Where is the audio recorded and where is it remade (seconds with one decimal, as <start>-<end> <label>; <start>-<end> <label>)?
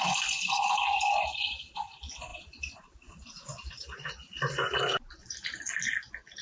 0.0-6.4 recorded